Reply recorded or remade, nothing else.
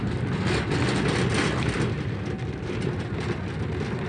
recorded